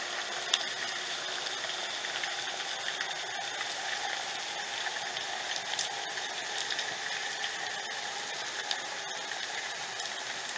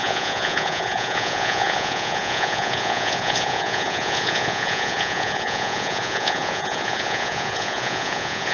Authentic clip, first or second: first